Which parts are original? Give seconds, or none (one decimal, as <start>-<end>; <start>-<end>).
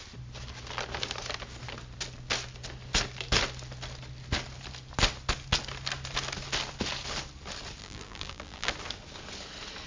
0.0-7.8; 8.7-9.9